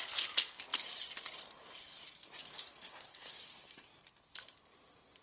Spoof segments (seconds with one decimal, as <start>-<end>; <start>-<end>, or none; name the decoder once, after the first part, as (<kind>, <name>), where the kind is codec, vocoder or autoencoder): 0.7-3.8 (vocoder, BigVGAN v2)